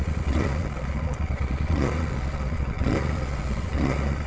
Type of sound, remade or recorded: remade